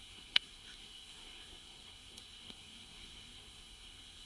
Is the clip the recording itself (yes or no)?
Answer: no